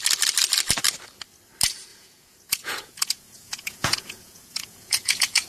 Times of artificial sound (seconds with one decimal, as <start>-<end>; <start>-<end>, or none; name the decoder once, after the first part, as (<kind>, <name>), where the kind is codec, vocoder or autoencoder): 1.9-5.5 (vocoder, Vocos)

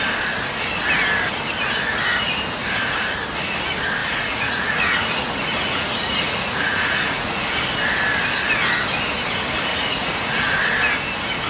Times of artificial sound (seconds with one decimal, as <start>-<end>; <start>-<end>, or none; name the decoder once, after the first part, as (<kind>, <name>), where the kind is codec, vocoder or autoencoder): 4.0-7.4 (vocoder, Vocos); 9.7-10.6

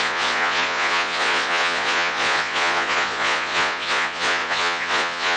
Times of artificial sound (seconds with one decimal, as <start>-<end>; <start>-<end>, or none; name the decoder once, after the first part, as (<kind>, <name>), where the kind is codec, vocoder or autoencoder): 0.0-5.4 (vocoder, Vocos)

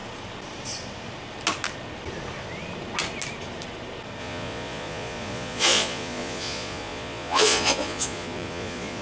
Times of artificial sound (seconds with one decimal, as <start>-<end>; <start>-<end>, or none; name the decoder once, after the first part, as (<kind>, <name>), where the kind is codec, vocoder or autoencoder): 4.2-9.0 (vocoder, Vocos)